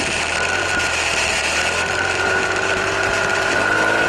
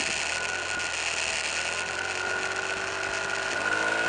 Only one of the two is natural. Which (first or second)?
second